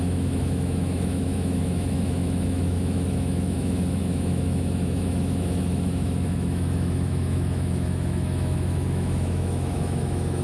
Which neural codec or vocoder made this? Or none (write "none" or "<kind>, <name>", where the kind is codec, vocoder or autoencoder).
autoencoder, DAC-VAE